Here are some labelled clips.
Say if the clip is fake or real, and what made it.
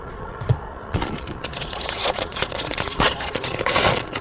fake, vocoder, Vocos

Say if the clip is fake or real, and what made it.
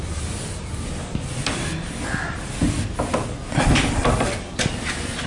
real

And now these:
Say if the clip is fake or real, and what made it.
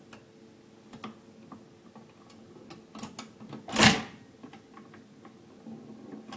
real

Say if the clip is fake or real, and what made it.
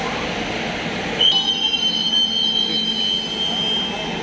real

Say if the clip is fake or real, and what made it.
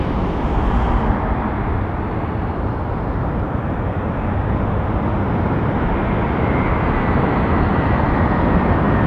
real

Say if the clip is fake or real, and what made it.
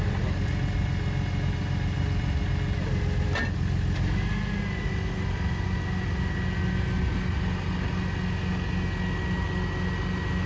real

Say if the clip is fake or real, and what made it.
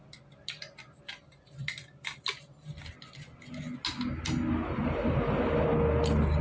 real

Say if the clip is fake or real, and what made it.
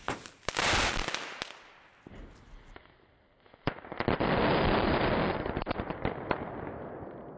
real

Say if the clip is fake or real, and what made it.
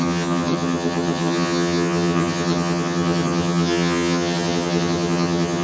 fake, vocoder, HiFi-GAN